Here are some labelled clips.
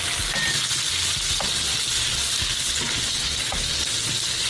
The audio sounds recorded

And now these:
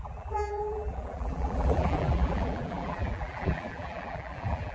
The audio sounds remade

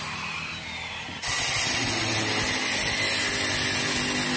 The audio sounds recorded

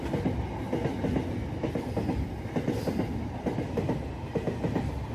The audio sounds recorded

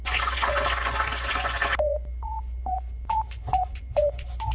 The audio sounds remade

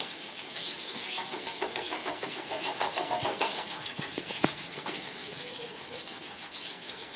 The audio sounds remade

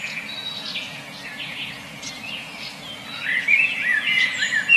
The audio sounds remade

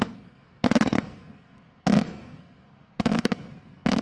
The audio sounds remade